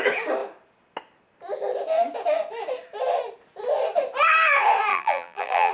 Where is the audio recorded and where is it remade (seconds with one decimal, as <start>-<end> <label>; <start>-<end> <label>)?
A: 0.0-4.9 recorded; 4.9-5.7 remade